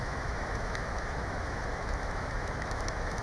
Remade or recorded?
remade